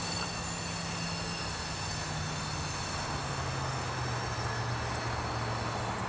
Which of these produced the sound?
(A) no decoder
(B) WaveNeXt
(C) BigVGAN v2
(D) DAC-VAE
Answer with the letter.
A